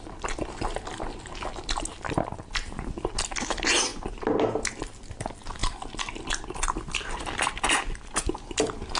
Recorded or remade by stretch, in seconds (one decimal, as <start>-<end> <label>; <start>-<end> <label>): 0.0-9.0 recorded